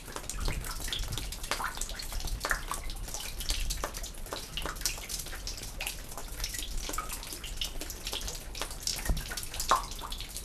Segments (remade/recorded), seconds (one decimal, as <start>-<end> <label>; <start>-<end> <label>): 0.0-10.4 recorded